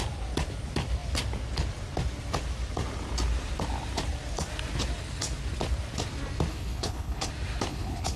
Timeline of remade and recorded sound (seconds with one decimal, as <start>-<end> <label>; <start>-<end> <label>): 0.0-6.5 recorded; 6.5-7.3 remade; 7.3-7.7 recorded; 7.7-8.2 remade